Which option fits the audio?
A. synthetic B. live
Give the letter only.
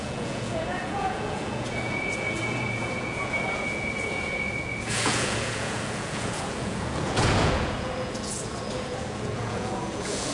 A